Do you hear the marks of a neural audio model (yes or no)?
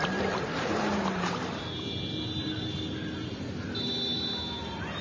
no